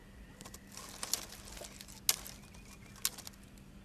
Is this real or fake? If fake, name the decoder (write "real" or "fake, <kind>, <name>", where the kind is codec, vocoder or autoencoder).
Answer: real